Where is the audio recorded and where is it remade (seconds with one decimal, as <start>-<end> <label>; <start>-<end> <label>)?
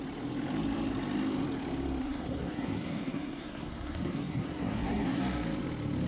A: 0.0-2.0 recorded; 2.0-5.2 remade; 5.2-6.1 recorded